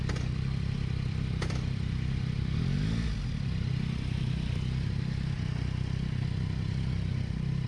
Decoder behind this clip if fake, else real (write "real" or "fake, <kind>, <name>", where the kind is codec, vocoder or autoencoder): real